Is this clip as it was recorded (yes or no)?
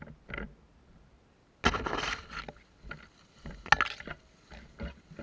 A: yes